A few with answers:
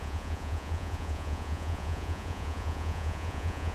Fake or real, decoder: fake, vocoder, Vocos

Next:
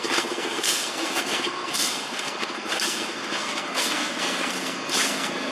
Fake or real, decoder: fake, codec, SNAC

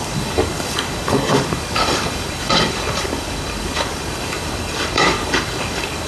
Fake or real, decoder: fake, codec, DAC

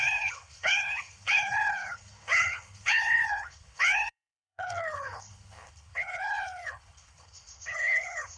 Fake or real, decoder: fake, codec, HILCodec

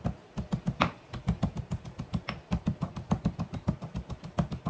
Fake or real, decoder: real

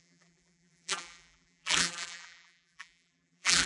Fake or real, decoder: fake, vocoder, BigVGAN v2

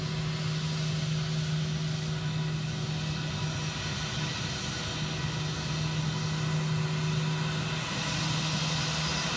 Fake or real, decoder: real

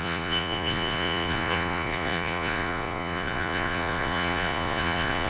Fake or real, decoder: fake, vocoder, Vocos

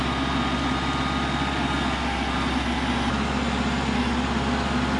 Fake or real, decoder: real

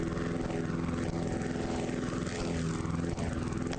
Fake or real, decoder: real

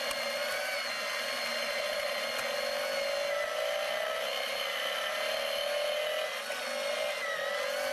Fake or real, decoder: real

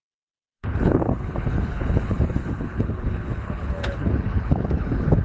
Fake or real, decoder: fake, codec, HILCodec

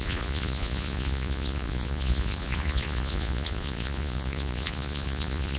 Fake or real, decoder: fake, vocoder, Vocos